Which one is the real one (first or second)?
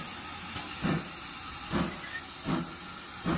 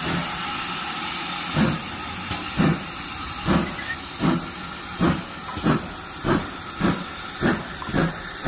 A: first